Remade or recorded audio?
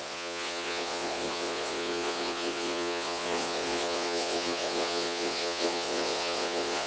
remade